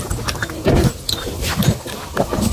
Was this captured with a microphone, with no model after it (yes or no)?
yes